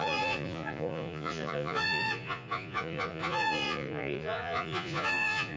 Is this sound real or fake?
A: fake